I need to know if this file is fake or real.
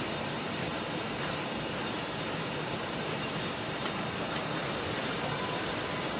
real